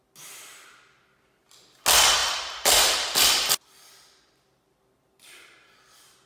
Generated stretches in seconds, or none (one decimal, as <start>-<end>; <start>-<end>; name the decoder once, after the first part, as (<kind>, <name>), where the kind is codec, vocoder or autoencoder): 2.2-4.6 (vocoder, BigVGAN v2)